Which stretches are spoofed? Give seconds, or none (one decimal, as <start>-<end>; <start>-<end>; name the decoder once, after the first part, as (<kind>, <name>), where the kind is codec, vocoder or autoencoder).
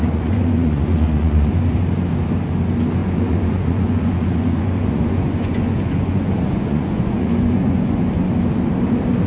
0.0-1.5 (vocoder, Vocos); 3.0-8.1